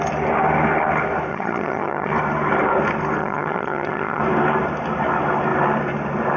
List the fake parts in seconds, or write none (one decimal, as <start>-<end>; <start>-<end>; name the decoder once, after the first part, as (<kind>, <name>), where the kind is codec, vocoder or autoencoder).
1.3-2.1 (vocoder, HiFi-GAN); 3.2-4.2